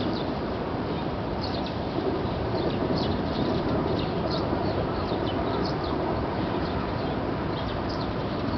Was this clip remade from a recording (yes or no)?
yes